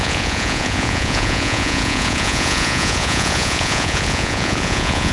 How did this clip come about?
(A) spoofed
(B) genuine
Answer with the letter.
A